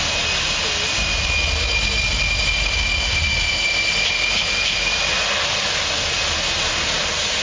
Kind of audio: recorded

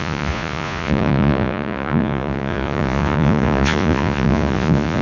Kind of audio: remade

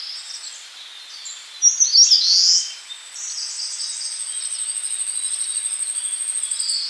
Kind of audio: recorded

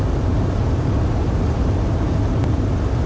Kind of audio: remade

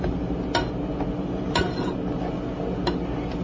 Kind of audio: recorded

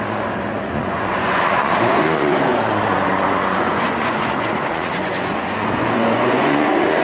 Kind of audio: remade